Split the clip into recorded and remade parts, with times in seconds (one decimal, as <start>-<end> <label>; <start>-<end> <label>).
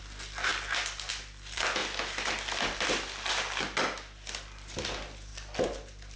0.0-6.2 recorded